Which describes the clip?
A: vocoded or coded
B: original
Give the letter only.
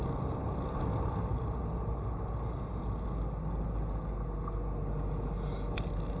B